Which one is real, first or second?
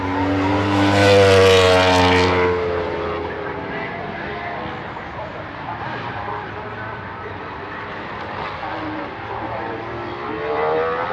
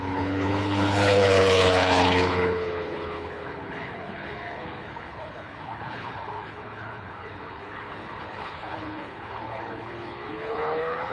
first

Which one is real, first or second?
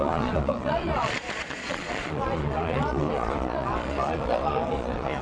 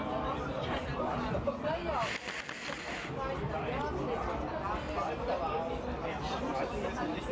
second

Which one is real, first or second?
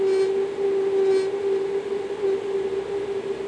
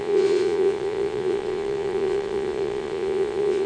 first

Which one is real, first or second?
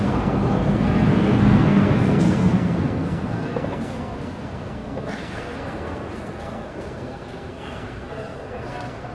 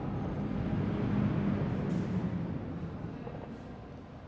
second